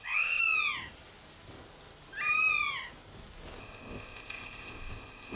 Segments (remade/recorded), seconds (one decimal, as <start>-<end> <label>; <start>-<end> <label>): 0.0-0.4 remade; 0.4-3.6 recorded; 3.6-5.4 remade